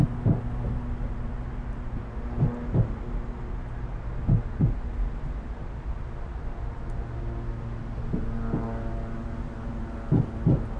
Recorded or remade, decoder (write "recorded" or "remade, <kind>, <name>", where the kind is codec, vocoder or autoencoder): recorded